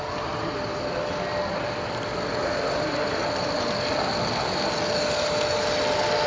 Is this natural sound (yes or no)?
yes